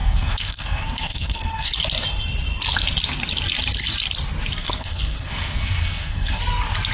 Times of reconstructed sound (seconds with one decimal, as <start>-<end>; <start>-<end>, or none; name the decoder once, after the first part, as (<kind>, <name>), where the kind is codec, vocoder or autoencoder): 0.0-1.7 (codec, SNAC); 4.6-6.4